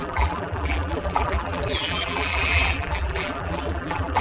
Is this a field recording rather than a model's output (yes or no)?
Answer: no